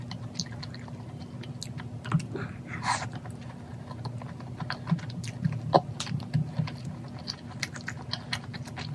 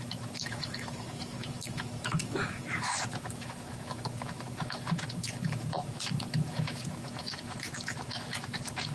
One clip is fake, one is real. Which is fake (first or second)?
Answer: second